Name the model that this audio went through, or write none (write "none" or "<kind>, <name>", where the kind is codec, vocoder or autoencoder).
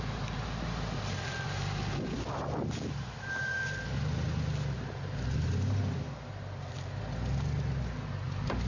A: none